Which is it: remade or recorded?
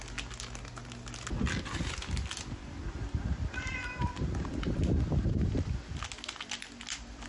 recorded